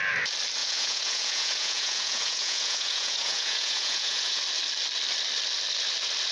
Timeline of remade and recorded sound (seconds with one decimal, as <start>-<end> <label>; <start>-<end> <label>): 0.0-0.6 recorded; 0.6-4.4 remade; 4.4-6.3 recorded